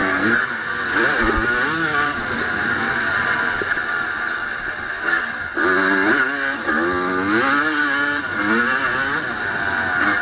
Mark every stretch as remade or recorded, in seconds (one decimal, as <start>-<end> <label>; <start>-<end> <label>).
0.0-0.8 remade; 0.8-10.2 recorded